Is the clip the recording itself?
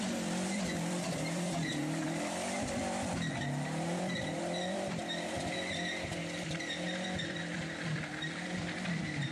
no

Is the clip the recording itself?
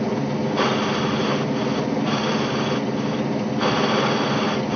yes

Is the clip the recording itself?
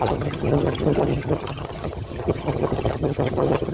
no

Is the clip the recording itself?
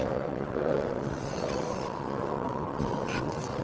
no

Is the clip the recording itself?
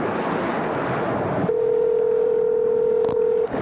yes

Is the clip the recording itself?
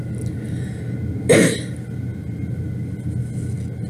yes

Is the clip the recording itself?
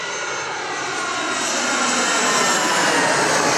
yes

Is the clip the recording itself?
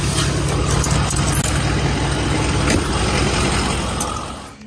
yes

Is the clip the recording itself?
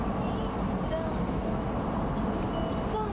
yes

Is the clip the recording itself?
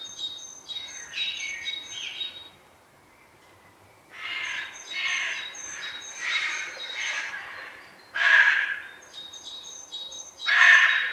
no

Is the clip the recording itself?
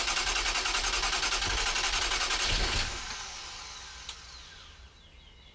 yes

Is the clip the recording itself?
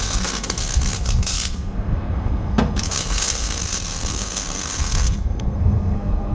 no